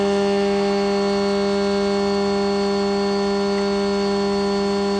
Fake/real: real